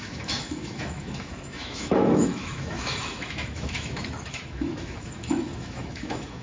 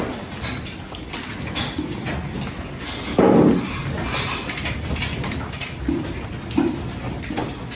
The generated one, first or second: first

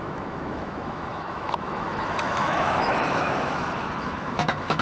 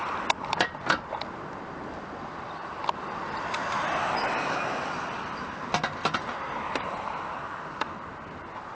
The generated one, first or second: first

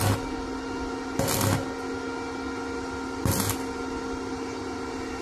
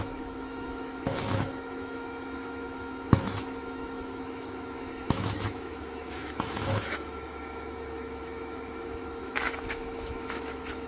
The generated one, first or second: second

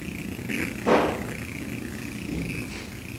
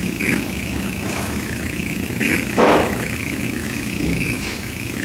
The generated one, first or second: second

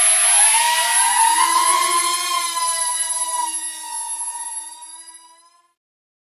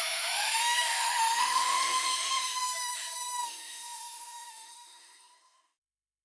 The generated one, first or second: second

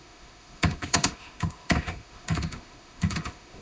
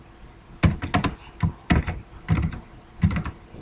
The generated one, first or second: first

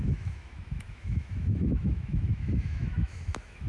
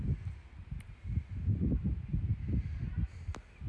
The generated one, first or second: first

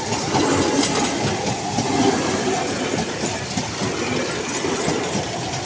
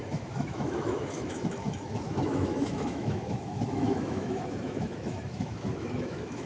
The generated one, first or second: second